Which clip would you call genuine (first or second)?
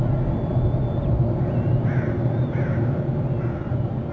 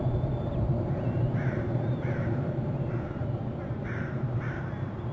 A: first